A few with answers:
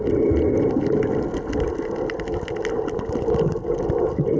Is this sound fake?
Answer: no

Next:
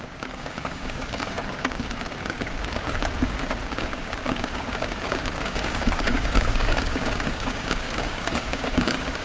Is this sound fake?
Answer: yes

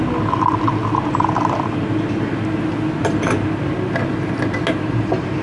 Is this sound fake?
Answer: no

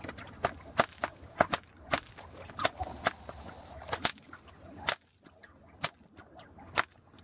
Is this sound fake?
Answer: no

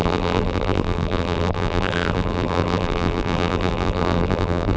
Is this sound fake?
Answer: yes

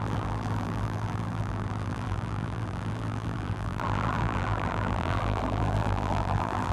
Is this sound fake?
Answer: yes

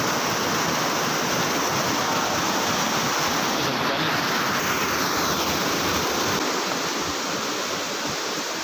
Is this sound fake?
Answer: no